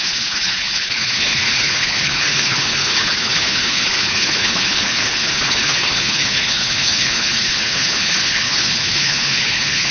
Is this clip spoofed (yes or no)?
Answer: yes